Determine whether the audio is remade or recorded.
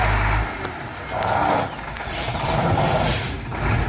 recorded